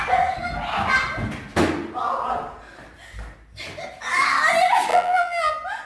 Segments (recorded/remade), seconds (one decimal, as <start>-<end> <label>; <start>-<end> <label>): 0.0-4.9 recorded; 4.9-5.5 remade; 5.5-5.9 recorded